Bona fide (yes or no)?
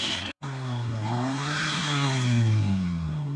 no